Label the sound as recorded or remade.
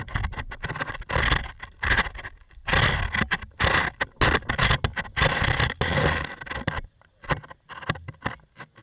recorded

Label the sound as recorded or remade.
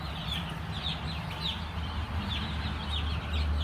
recorded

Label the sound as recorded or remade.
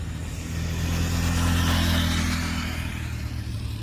recorded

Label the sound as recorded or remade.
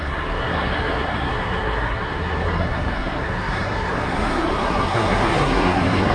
remade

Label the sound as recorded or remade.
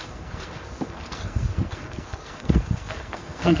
remade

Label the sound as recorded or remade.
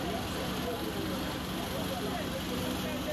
recorded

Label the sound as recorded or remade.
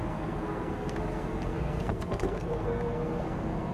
remade